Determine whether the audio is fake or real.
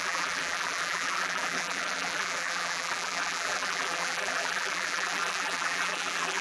fake